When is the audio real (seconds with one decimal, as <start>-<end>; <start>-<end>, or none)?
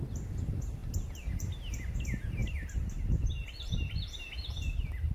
0.0-2.4; 3.3-5.1